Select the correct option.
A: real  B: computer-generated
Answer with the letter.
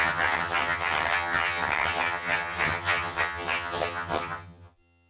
B